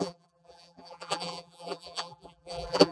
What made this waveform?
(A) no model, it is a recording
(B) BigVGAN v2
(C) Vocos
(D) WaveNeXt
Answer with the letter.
B